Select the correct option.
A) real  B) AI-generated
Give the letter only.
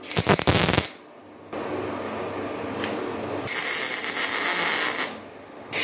A